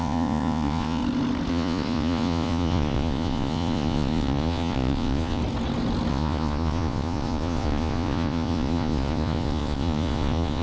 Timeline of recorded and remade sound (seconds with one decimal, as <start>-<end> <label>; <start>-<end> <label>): 0.0-1.0 remade; 1.0-1.5 recorded; 1.5-5.4 remade; 5.4-6.1 recorded; 6.1-10.6 remade